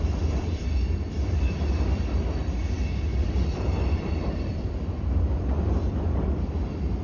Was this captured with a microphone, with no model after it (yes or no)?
no